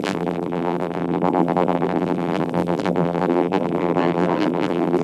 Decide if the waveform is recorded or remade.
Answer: remade